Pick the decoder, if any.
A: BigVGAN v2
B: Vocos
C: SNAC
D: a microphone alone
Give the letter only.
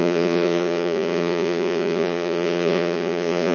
B